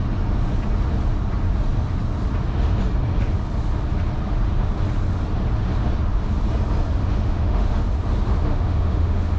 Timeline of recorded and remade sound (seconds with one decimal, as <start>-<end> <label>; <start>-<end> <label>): 0.0-7.0 recorded; 7.0-7.8 remade; 7.8-8.5 recorded; 8.5-9.4 remade